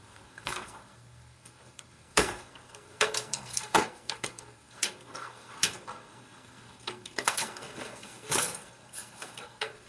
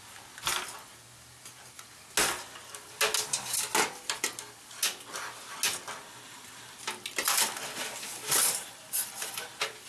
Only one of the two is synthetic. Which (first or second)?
first